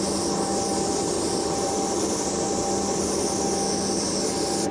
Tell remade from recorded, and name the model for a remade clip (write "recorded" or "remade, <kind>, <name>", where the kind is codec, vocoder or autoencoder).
recorded